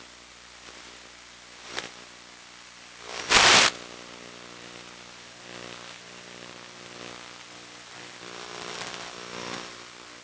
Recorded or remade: recorded